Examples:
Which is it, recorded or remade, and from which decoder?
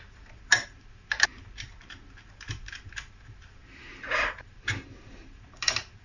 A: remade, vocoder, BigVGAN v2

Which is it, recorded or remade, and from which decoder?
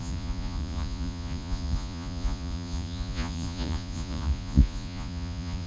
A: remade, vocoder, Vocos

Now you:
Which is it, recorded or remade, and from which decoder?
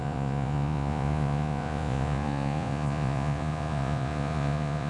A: remade, vocoder, Vocos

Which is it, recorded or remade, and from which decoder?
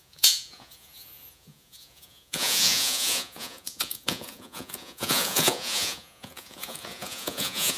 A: remade, vocoder, Vocos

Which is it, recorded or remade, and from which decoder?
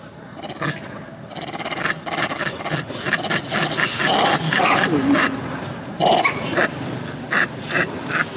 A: recorded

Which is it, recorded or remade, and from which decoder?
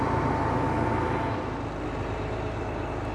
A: recorded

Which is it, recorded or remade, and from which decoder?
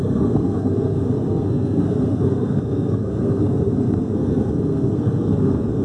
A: remade, codec, SNAC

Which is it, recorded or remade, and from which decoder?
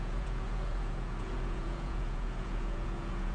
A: remade, vocoder, Vocos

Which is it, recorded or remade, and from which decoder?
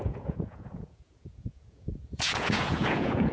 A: remade, vocoder, Vocos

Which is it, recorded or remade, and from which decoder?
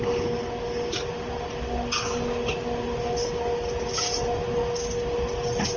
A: recorded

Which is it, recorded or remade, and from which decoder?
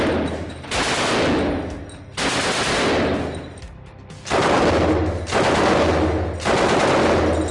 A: recorded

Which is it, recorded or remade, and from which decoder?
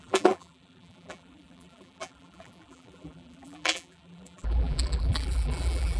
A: remade, vocoder, BigVGAN v2